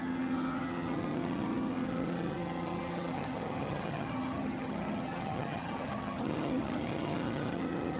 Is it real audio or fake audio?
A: fake